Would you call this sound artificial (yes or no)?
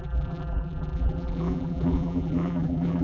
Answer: yes